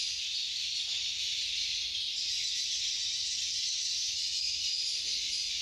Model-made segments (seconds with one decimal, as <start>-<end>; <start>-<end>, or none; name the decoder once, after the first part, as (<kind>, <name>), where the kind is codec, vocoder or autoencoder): none